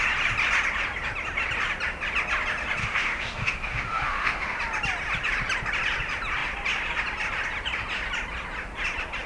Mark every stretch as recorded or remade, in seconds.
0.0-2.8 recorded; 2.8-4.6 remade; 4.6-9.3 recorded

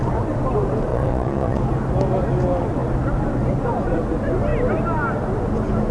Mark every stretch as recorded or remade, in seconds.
0.0-0.9 recorded; 0.9-1.6 remade; 1.6-5.9 recorded

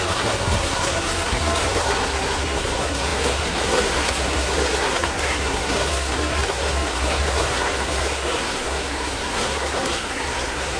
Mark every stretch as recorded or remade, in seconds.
0.0-10.8 remade